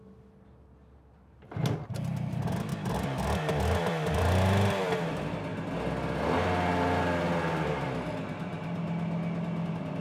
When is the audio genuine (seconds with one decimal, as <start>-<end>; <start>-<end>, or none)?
0.0-10.0